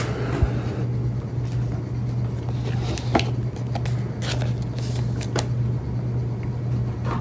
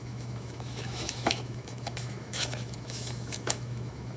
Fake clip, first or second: second